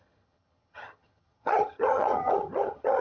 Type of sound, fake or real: fake